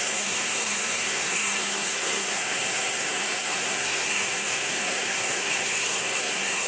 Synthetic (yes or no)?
yes